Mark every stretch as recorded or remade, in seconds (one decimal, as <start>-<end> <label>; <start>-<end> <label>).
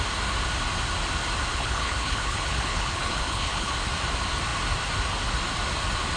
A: 0.0-1.5 recorded; 1.5-3.7 remade; 3.7-6.2 recorded